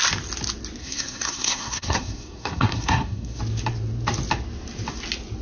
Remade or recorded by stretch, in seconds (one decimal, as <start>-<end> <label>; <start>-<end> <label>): 0.0-0.8 recorded; 0.8-3.4 remade; 3.4-5.4 recorded